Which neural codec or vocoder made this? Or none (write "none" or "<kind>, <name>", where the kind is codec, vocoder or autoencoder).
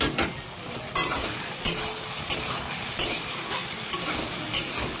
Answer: none